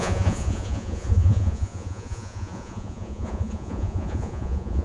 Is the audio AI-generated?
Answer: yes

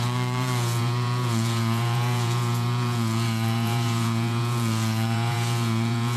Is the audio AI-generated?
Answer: yes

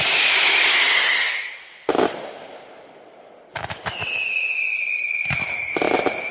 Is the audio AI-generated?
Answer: no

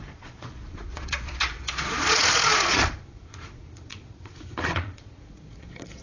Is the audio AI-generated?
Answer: yes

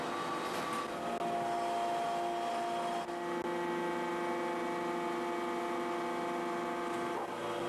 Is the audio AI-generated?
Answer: no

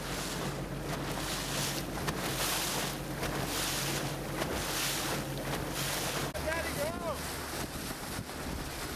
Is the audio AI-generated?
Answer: no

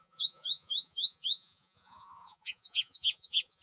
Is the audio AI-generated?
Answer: yes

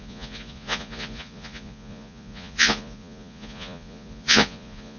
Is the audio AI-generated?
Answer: yes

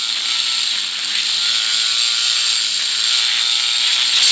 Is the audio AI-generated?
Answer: no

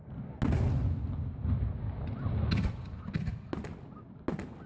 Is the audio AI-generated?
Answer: no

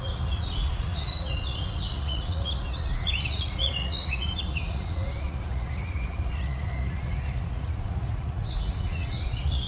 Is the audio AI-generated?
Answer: yes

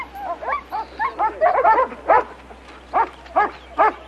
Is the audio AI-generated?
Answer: no